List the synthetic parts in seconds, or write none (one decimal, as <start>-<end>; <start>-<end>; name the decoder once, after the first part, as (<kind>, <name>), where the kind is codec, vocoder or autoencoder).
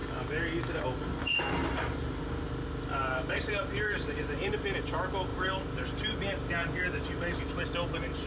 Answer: 3.0-4.5 (vocoder, BigVGAN v2); 5.3-7.4